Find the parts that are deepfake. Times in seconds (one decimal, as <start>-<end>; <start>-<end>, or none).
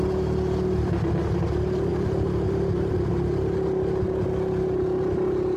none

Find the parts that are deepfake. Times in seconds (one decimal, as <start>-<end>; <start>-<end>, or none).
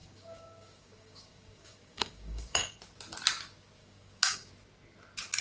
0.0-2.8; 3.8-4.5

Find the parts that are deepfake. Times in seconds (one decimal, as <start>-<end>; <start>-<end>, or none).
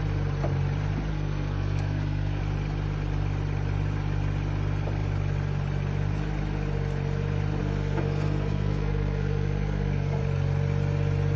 1.1-2.4; 7.6-10.2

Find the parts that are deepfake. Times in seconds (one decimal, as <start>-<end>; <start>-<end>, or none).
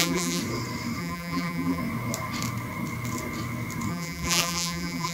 0.0-0.4; 1.0-1.8; 3.9-5.1